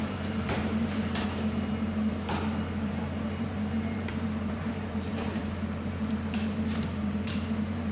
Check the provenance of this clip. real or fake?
fake